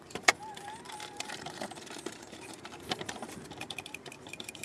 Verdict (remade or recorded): remade